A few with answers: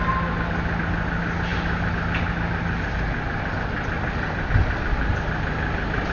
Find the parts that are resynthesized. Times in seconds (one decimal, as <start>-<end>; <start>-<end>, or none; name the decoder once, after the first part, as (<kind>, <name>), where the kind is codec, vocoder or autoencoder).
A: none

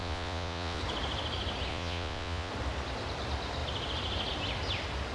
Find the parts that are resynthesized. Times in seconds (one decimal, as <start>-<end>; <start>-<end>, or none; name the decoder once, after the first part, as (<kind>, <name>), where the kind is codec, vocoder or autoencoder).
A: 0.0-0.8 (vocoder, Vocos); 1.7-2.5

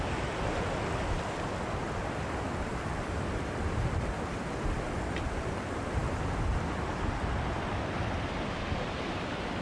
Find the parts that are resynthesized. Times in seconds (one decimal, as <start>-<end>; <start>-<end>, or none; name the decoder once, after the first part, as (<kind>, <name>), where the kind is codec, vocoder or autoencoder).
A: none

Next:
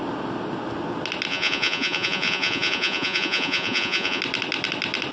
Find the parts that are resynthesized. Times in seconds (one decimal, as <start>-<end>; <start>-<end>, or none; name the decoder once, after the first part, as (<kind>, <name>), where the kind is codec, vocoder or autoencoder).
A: 1.3-4.2 (vocoder, Vocos)